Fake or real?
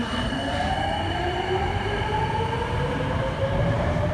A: fake